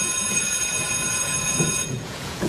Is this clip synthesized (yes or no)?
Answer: yes